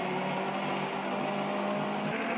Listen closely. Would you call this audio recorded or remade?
recorded